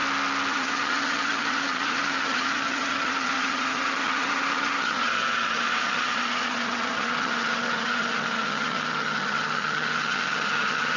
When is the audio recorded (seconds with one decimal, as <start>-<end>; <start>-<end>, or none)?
0.0-0.5